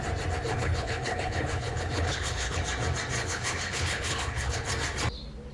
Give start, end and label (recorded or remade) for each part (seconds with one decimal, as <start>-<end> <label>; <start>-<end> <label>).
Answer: 0.0-0.5 recorded; 0.5-2.6 remade; 2.6-3.2 recorded; 3.2-4.7 remade; 4.7-5.5 recorded